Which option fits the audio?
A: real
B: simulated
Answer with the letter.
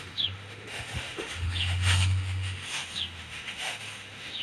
B